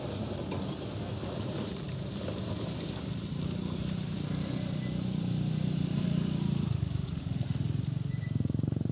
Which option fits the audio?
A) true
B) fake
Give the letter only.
B